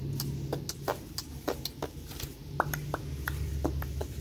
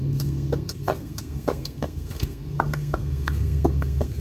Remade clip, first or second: second